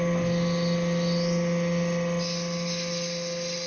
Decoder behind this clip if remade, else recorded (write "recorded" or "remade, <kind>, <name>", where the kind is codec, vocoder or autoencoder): recorded